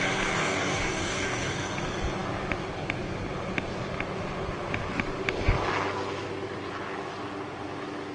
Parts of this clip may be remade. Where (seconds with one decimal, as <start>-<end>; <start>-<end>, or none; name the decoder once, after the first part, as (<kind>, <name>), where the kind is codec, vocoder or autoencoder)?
0.4-1.5 (codec, DAC)